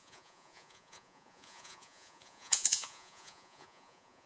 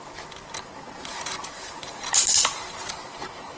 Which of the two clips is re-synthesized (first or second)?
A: first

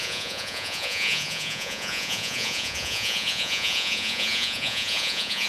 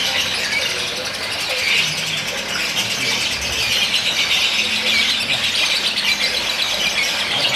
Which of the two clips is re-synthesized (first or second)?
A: first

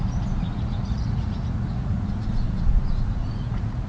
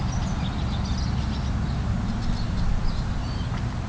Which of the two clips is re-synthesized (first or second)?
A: first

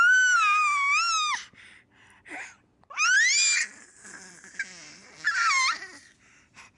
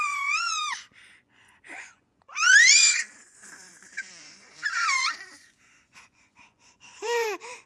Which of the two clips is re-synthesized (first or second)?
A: second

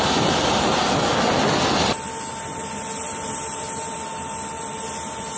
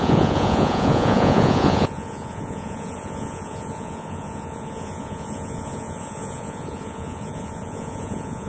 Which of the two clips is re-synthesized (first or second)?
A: second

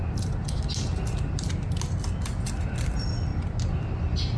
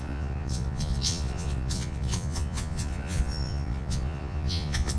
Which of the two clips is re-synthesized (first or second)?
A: second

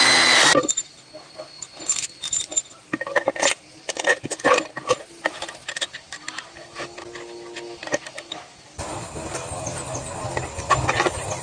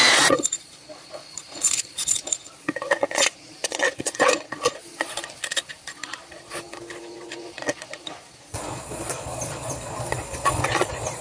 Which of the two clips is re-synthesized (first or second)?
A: second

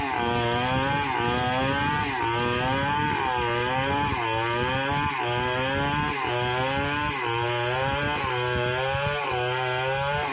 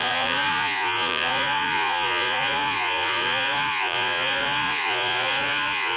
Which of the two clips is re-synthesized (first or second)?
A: second